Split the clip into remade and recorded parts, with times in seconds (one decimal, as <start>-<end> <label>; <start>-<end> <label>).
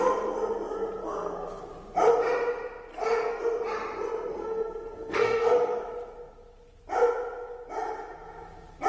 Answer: 0.0-1.0 recorded; 1.0-1.7 remade; 1.7-2.9 recorded; 2.9-3.4 remade; 3.4-4.3 recorded; 4.3-5.8 remade; 5.8-8.9 recorded